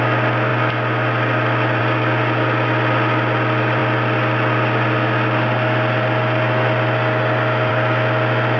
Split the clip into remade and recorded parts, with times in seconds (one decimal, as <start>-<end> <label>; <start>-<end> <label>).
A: 0.0-8.6 recorded